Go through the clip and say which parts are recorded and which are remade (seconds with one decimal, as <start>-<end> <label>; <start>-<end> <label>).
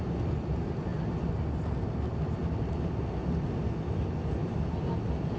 0.0-4.4 recorded; 4.4-5.0 remade; 5.0-5.4 recorded